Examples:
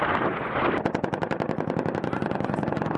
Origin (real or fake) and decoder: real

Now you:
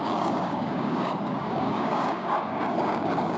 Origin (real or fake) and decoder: fake, codec, DAC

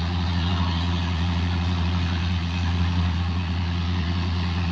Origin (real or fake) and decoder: fake, vocoder, Vocos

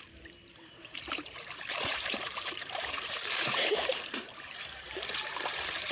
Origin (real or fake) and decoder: fake, vocoder, BigVGAN v2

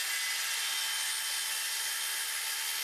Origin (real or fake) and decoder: real